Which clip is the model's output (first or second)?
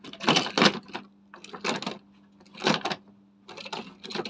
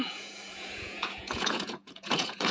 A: second